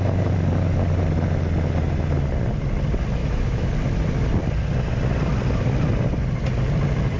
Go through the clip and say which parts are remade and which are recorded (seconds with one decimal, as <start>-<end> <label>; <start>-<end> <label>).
0.0-3.2 recorded; 3.2-3.7 remade; 3.7-7.2 recorded